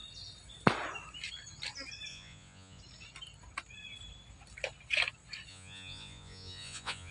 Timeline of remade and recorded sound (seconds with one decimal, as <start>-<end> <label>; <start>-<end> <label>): 0.0-2.1 recorded; 2.1-2.8 remade; 2.8-5.5 recorded; 5.5-7.1 remade